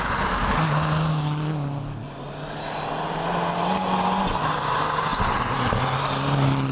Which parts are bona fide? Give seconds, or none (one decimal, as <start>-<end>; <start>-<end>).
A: 0.0-6.7